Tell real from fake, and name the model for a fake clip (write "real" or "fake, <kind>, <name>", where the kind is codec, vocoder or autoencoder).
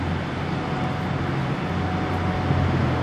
real